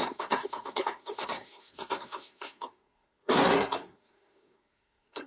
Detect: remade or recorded remade